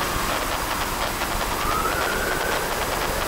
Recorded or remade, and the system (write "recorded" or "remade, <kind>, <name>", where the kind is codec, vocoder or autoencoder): recorded